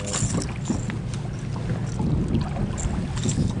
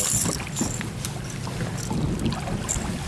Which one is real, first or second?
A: first